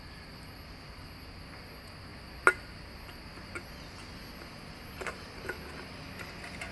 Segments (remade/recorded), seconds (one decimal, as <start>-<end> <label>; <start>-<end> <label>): 0.0-6.7 recorded